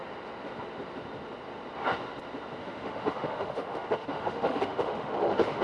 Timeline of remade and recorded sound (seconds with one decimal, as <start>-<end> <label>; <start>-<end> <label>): 0.0-2.6 recorded; 2.6-5.6 remade